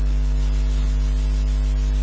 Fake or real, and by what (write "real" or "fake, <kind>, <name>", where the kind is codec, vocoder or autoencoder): real